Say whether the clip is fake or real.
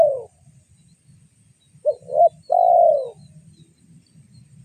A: real